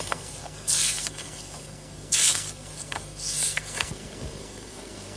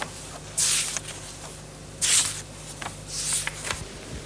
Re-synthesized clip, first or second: first